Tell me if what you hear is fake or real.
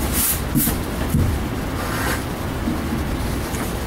real